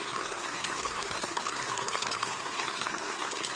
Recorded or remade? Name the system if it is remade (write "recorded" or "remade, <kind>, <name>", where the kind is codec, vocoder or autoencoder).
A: remade, codec, SNAC